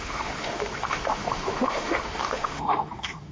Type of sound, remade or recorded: remade